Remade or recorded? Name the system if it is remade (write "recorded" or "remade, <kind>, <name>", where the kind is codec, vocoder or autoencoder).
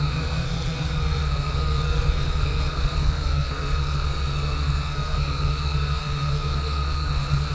remade, codec, SNAC